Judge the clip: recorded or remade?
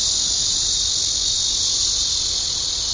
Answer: recorded